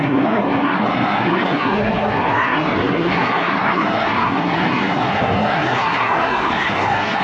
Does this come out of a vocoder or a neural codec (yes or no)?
yes